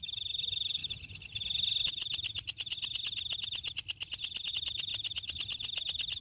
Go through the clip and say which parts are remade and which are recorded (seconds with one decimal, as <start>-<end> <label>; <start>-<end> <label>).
0.0-0.8 remade; 0.8-4.5 recorded; 4.5-4.9 remade; 4.9-6.2 recorded